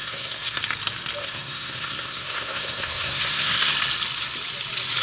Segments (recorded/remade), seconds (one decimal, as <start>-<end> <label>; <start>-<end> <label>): 0.0-0.6 remade; 0.6-1.2 recorded; 1.2-3.7 remade; 3.7-5.0 recorded

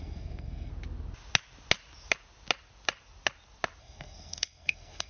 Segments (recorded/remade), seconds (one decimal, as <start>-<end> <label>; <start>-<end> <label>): 0.0-0.7 remade; 0.7-3.8 recorded; 3.8-5.1 remade

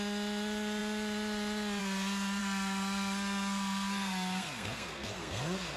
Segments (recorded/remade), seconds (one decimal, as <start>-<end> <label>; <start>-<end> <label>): 0.0-2.4 recorded; 2.4-5.8 remade